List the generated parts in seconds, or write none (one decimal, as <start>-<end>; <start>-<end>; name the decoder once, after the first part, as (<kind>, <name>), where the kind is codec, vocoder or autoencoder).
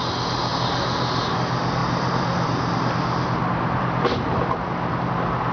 1.8-5.1 (vocoder, BigVGAN v2)